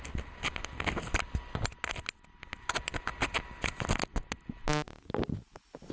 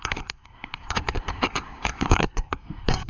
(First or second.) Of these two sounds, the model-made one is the second